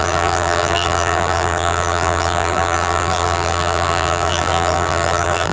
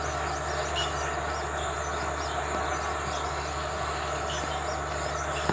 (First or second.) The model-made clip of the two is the first